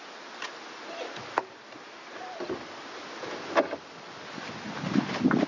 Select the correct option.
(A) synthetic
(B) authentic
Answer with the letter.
B